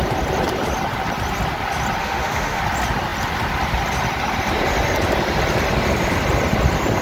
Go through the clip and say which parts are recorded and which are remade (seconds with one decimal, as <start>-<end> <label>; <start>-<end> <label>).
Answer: 0.0-2.0 recorded; 2.0-2.6 remade; 2.6-7.0 recorded